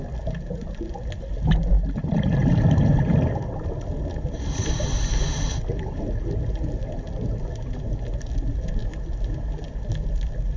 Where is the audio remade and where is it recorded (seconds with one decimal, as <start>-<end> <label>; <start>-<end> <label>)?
0.0-10.6 recorded